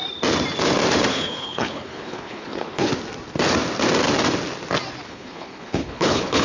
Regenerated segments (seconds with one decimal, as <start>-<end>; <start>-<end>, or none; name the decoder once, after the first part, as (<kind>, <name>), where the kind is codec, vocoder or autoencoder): 1.1-2.9 (codec, HILCodec); 5.1-6.4